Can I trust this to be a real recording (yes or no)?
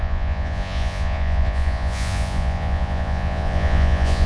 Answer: no